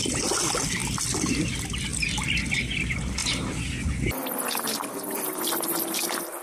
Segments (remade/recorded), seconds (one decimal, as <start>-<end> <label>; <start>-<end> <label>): 0.0-0.8 remade; 0.8-1.4 recorded; 1.4-1.9 remade; 1.9-2.4 recorded; 2.4-3.2 remade; 3.2-4.9 recorded; 4.9-6.4 remade